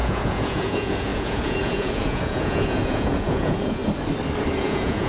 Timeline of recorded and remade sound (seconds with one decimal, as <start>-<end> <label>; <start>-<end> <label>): 0.0-3.8 remade; 3.8-4.6 recorded; 4.6-5.1 remade